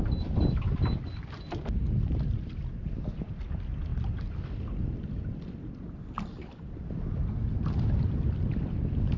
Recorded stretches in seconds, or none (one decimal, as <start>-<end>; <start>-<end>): 0.0-9.2